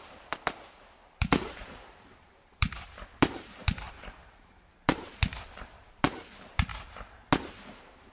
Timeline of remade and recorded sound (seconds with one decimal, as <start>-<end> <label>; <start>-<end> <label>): 0.0-6.7 remade; 6.7-7.4 recorded; 7.4-8.1 remade